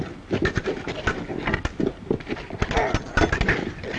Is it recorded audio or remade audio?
recorded